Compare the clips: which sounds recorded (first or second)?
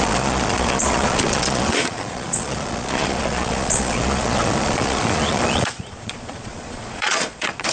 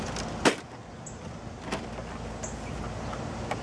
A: second